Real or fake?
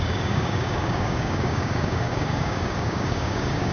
fake